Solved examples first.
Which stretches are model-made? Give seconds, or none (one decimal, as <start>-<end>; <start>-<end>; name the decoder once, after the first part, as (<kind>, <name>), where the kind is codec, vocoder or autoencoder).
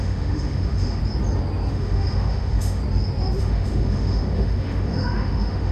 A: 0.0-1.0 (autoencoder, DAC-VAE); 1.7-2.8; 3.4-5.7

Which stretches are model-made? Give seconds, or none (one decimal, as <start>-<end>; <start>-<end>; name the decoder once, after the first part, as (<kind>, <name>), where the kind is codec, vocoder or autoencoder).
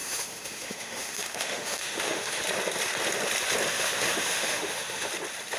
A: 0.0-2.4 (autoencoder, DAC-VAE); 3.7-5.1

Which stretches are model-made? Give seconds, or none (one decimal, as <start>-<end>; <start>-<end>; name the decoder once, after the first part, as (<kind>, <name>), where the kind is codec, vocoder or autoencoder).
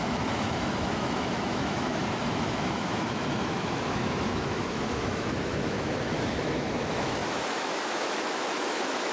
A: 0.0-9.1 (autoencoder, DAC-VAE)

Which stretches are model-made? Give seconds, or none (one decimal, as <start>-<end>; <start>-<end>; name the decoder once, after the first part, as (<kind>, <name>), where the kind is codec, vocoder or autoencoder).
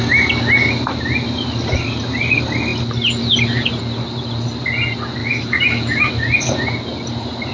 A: 5.2-6.1 (autoencoder, DAC-VAE)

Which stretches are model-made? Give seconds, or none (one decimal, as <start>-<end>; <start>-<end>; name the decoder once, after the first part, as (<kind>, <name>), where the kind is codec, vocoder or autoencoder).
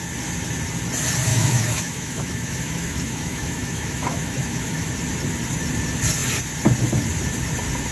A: 1.3-4.9 (autoencoder, DAC-VAE)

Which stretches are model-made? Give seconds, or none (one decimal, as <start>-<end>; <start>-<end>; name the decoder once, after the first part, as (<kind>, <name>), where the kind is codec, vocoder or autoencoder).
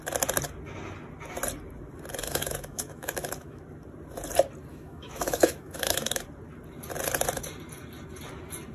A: 2.2-3.6 (autoencoder, DAC-VAE); 4.7-6.2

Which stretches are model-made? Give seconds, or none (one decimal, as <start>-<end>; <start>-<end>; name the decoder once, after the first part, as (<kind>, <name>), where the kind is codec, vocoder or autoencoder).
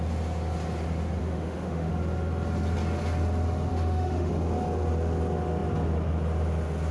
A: 1.2-1.9 (autoencoder, DAC-VAE); 3.7-4.3